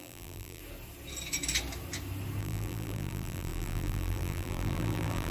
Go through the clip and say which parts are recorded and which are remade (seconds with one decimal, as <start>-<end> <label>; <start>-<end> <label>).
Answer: 0.0-0.6 remade; 0.6-2.4 recorded; 2.4-5.3 remade